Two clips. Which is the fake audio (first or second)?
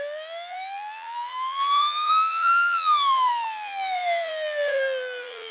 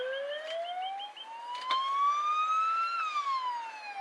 first